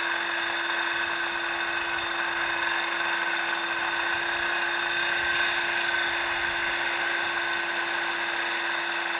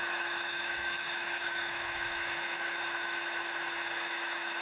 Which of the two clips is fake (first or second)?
second